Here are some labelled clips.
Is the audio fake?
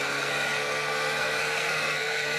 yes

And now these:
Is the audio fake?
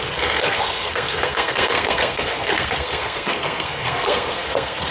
yes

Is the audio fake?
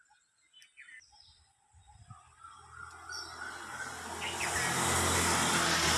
no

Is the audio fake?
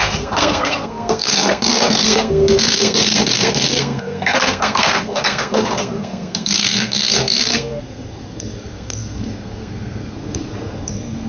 yes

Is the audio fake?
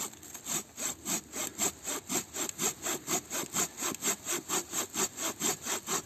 no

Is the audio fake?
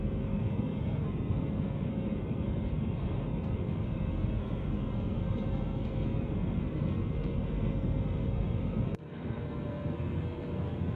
yes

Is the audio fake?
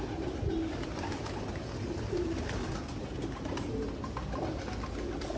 no